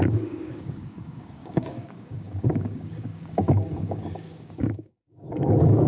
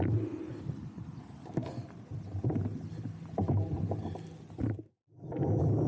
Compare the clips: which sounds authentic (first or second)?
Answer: second